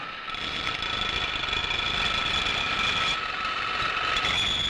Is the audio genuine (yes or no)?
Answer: yes